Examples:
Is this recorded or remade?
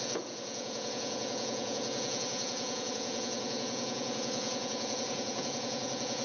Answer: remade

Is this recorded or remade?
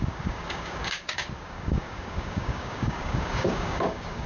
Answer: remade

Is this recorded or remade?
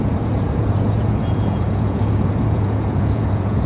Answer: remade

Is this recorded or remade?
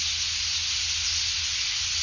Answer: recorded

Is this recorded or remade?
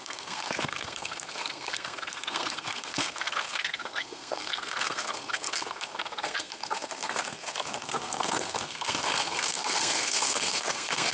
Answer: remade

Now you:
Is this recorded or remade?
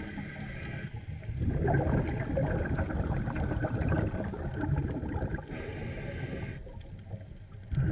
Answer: recorded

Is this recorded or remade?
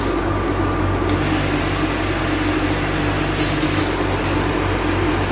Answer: recorded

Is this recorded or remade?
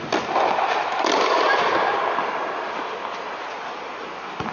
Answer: recorded